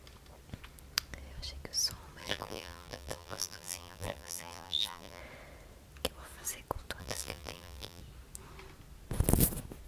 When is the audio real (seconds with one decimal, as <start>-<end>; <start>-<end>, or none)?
0.0-2.2; 5.2-7.0; 8.0-9.9